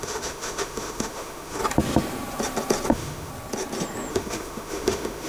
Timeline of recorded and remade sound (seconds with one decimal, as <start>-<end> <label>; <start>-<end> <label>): 0.0-1.6 remade; 1.6-2.9 recorded; 2.9-3.3 remade; 3.3-4.1 recorded; 4.1-5.3 remade